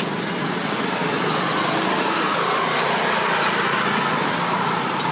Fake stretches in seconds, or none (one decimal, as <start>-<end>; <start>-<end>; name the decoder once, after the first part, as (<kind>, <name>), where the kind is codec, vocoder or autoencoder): none